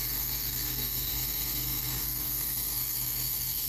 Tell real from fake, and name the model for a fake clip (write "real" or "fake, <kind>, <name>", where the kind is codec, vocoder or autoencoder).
fake, codec, SNAC